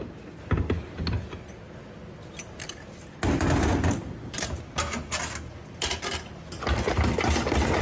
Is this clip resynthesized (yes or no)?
no